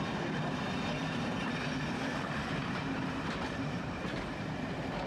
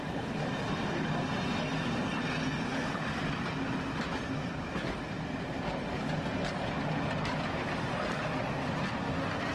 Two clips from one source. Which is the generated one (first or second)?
first